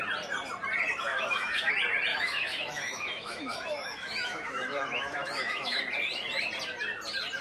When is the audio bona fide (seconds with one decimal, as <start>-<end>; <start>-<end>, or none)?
0.0-1.1; 1.7-2.1; 5.8-7.4